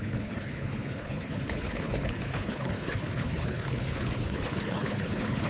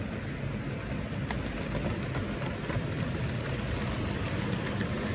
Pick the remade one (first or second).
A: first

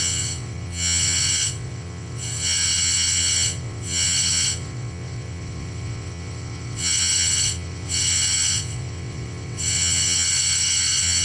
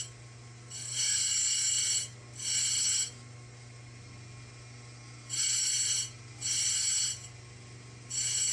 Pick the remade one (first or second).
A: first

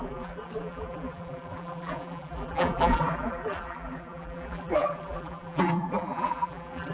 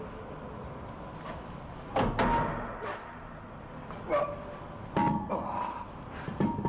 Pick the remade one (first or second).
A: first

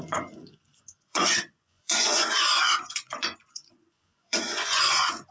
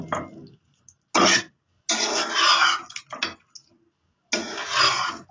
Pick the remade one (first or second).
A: first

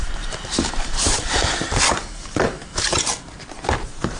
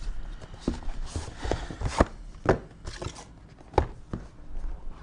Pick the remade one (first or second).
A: first